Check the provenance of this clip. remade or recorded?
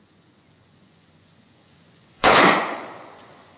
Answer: remade